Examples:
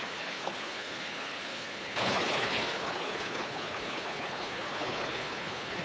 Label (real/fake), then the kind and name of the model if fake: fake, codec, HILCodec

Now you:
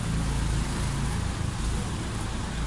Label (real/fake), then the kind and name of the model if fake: real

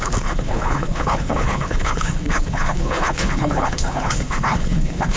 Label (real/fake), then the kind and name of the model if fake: fake, codec, HILCodec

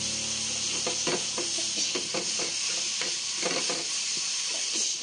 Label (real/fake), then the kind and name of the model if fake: real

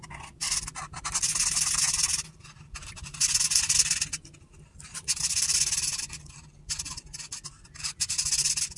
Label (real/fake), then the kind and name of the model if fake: real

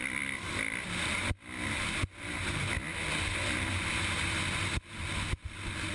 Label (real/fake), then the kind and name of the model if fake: real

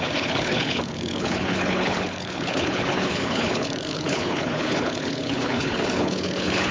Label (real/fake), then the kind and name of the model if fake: fake, codec, HILCodec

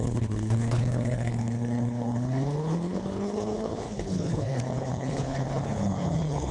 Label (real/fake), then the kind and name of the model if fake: fake, codec, HILCodec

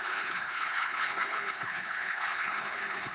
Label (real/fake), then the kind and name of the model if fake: fake, codec, HILCodec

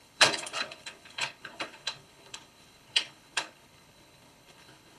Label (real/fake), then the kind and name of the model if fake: fake, codec, HILCodec